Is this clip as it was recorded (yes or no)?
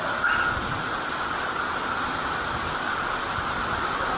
yes